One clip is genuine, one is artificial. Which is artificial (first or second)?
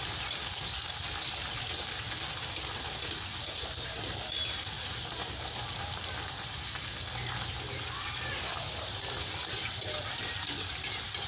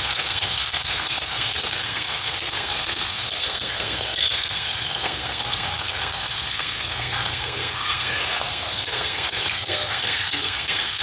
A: second